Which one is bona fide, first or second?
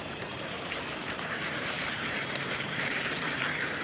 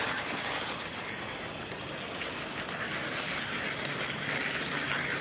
second